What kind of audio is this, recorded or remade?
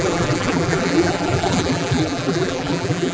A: remade